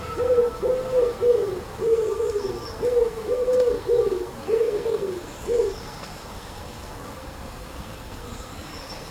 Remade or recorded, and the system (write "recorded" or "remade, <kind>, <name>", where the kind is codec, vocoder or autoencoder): remade, codec, SNAC